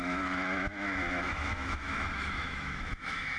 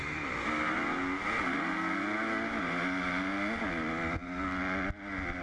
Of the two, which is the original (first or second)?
second